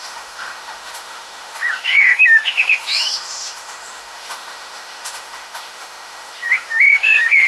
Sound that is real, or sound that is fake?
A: fake